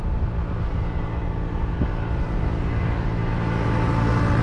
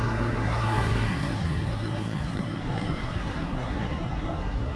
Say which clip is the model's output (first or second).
second